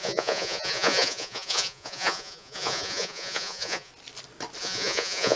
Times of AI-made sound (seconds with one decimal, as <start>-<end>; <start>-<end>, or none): 0.0-3.9; 4.6-5.4